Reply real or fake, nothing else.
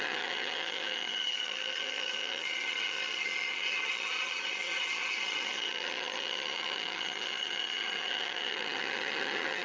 fake